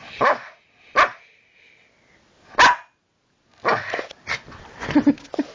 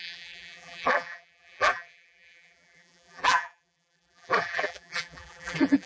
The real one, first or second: first